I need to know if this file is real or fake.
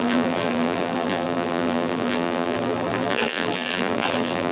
fake